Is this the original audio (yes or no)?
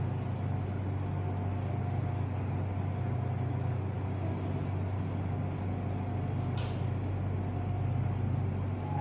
yes